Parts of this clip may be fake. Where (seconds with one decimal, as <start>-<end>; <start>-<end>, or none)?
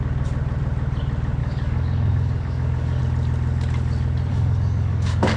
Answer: 1.4-3.0; 4.3-5.4